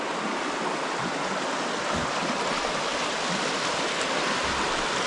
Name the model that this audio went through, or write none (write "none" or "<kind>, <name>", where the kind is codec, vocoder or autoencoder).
none